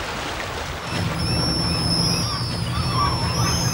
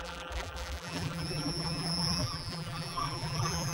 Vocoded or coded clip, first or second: second